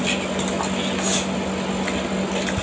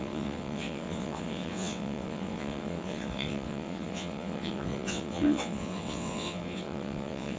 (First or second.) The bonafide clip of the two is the first